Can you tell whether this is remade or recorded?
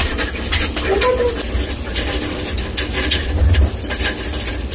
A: recorded